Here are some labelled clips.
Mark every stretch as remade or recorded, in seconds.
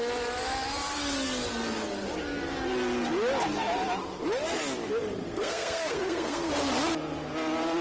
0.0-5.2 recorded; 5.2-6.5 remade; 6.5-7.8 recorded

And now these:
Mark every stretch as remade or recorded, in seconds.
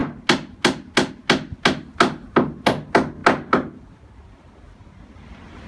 0.0-5.7 recorded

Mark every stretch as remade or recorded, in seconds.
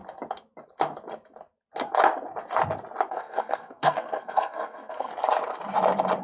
0.0-3.1 recorded; 3.1-5.1 remade; 5.1-6.2 recorded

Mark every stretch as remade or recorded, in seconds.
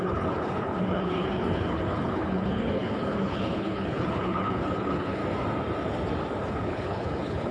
0.0-5.2 remade; 5.2-6.5 recorded; 6.5-7.5 remade